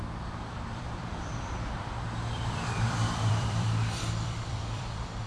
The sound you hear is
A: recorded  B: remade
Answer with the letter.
B